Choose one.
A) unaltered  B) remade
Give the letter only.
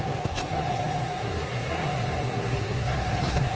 B